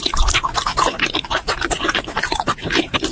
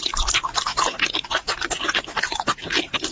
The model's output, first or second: first